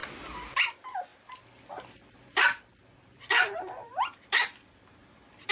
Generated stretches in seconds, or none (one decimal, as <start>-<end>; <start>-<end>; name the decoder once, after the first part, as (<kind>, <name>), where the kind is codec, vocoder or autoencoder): 1.1-3.9 (vocoder, BigVGAN v2)